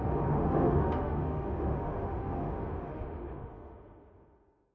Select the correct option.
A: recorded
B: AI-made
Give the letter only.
B